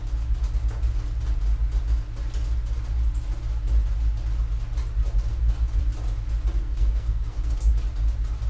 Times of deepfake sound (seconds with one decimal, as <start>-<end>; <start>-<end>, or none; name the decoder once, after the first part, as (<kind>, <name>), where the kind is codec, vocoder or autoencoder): 5.3-5.8 (codec, SNAC); 6.6-7.7

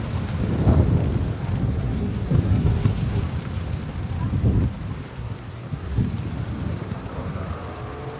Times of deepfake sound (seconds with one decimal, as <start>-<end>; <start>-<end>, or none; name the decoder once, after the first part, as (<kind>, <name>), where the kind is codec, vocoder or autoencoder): 1.6-3.2 (codec, SNAC); 5.2-6.1; 6.7-7.5

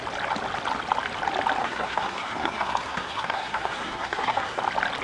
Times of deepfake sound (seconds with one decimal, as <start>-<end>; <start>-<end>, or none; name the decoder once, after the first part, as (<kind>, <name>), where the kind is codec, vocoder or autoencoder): 1.6-4.6 (codec, SNAC)

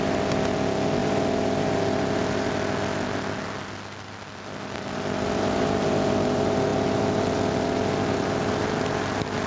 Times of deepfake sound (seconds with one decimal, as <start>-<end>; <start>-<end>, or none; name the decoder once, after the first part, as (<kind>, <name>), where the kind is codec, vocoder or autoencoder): none

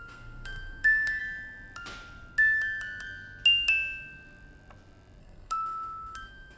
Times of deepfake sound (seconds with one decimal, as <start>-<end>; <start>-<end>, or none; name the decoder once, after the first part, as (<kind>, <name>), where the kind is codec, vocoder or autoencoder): 0.0-1.2 (codec, SNAC); 5.2-6.6

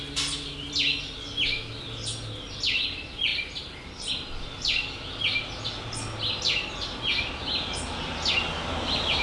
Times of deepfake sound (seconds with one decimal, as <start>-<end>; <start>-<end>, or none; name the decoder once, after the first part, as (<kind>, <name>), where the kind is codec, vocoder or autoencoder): none

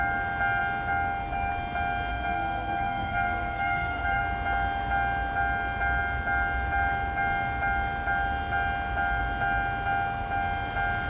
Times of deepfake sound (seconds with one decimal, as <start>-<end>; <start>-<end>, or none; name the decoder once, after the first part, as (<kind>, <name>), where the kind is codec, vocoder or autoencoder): 2.1-4.2 (codec, SNAC)

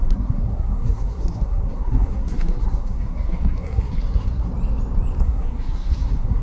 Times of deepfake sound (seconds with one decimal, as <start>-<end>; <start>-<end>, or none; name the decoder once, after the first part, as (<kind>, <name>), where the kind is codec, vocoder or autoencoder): 0.0-4.5 (codec, SNAC); 5.2-6.4